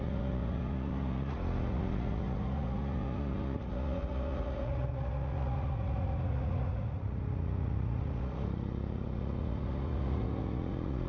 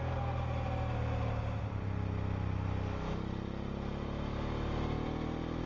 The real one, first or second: second